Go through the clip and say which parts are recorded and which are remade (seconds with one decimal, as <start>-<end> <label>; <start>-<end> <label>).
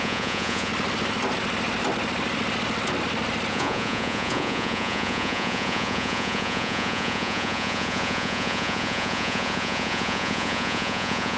0.0-0.7 remade; 0.7-3.5 recorded; 3.5-11.4 remade